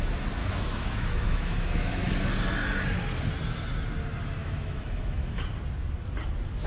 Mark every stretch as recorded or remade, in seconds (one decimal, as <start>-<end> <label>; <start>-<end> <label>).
0.0-0.4 recorded; 0.4-2.1 remade; 2.1-4.4 recorded; 4.4-5.4 remade; 5.4-6.7 recorded